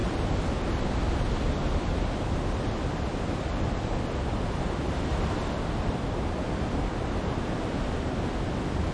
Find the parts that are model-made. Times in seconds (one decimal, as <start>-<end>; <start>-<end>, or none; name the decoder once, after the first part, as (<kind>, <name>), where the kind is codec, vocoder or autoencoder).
none